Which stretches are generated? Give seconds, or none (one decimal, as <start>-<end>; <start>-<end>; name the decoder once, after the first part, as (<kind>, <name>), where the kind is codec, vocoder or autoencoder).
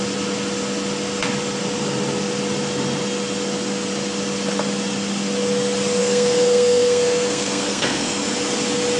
6.0-8.2 (codec, SNAC)